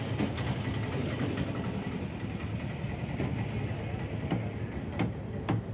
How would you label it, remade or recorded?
recorded